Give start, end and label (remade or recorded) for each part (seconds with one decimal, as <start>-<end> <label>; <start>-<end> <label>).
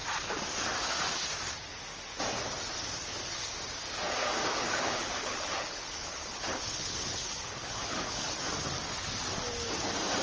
0.0-4.5 recorded; 4.5-8.4 remade; 8.4-10.2 recorded